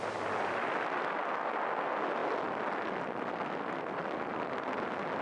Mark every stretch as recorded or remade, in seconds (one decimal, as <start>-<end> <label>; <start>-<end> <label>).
0.0-5.2 recorded